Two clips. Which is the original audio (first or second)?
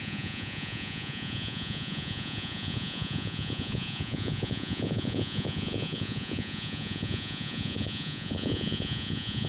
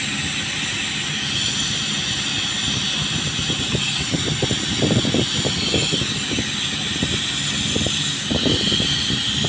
second